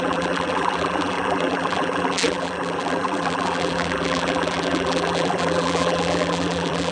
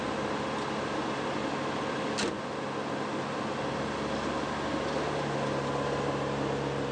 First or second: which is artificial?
first